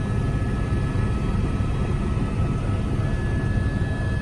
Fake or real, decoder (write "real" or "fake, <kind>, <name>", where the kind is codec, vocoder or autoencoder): real